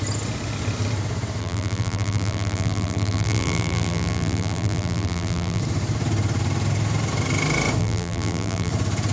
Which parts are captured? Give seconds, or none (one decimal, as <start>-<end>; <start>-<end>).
0.0-1.4; 5.6-7.8; 8.7-9.1